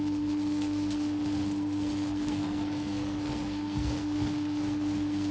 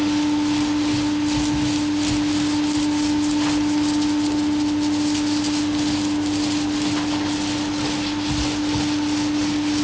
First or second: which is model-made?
first